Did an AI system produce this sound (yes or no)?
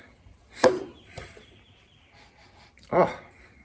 no